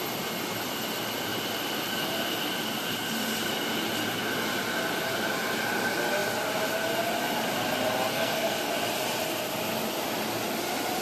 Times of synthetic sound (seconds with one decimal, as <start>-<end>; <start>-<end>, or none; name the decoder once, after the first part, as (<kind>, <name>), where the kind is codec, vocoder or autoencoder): 8.1-8.7 (codec, SNAC)